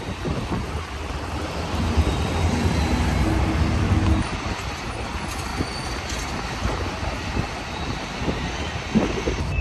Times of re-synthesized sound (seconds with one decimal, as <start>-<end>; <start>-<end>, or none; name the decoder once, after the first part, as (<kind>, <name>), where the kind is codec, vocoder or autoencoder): 5.5-6.0 (vocoder, BigVGAN v2)